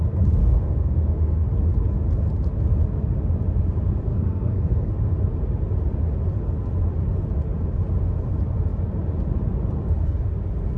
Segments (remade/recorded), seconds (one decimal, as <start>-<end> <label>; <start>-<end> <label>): 0.0-0.4 recorded; 0.4-1.4 remade; 1.4-4.1 recorded; 4.1-4.9 remade; 4.9-10.8 recorded